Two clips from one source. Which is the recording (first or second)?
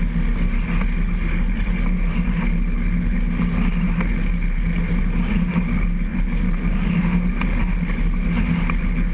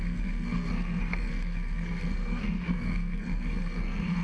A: first